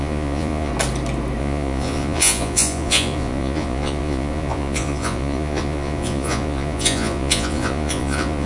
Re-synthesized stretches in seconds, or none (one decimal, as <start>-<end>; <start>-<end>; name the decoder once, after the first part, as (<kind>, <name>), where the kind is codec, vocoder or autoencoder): 0.0-0.7 (vocoder, Vocos); 1.4-8.5